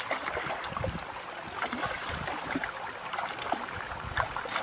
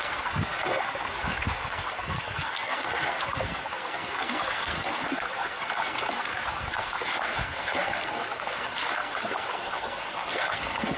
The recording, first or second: first